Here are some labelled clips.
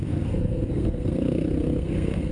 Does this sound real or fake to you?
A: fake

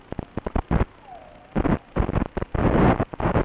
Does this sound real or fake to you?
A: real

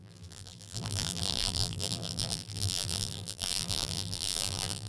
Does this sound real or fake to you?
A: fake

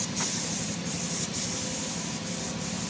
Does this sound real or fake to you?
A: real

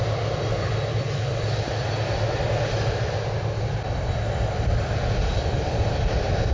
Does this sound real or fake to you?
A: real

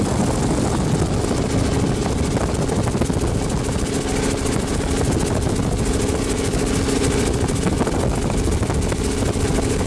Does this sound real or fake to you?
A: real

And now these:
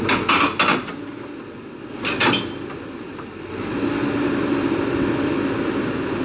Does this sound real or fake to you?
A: real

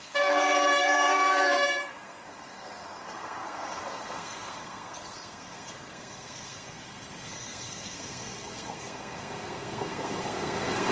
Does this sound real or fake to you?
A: fake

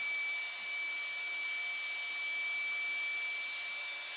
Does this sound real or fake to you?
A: real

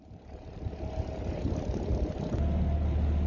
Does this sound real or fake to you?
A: real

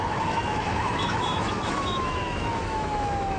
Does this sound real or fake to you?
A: fake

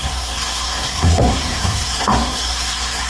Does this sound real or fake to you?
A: fake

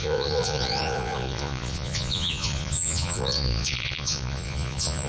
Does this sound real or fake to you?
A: fake